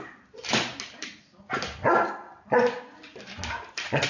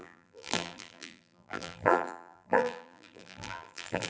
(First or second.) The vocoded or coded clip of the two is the second